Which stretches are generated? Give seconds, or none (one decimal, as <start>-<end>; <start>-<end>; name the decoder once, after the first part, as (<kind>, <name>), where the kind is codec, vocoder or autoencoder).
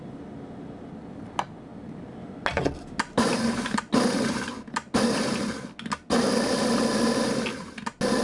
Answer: none